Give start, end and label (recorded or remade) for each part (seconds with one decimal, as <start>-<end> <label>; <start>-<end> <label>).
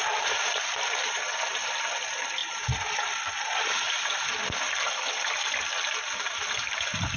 0.0-2.4 remade; 2.4-6.2 recorded; 6.2-7.2 remade